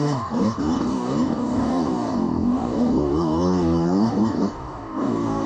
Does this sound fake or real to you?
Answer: fake